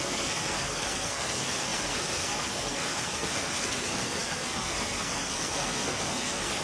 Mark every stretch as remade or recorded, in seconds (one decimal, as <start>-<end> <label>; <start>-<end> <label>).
0.0-6.6 remade